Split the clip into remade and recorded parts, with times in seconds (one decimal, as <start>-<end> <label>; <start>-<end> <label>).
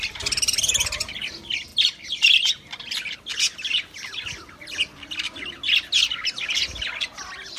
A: 0.0-7.6 recorded